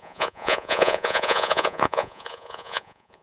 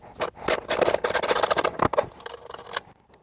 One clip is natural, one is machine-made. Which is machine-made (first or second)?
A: first